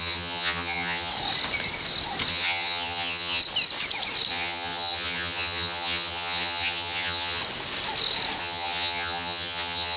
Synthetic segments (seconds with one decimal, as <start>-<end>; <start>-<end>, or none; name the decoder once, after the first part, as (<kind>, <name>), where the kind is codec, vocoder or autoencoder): 0.0-1.1 (vocoder, HiFi-GAN); 2.3-3.4; 4.3-7.4; 8.4-10.0